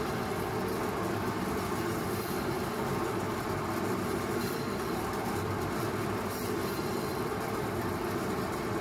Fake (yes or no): yes